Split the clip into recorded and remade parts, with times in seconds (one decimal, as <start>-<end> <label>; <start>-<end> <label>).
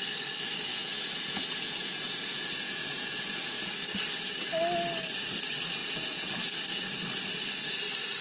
0.0-0.7 recorded; 0.7-3.7 remade; 3.7-5.8 recorded; 5.8-6.3 remade; 6.3-8.2 recorded